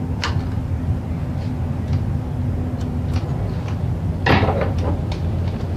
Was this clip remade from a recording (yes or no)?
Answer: no